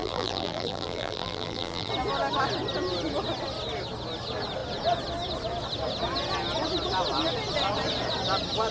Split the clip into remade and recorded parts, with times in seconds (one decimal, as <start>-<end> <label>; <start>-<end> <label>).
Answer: 0.0-1.9 remade; 1.9-8.7 recorded